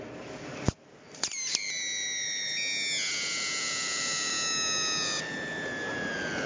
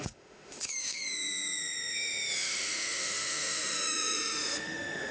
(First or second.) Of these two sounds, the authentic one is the first